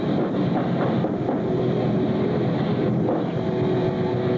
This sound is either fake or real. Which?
real